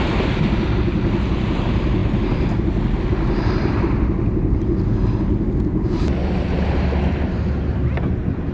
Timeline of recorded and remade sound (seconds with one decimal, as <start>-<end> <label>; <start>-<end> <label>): 0.0-8.5 recorded

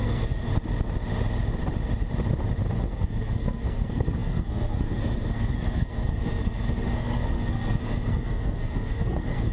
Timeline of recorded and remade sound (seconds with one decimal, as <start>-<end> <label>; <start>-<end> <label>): 0.0-0.5 remade; 0.5-2.8 recorded; 2.8-9.5 remade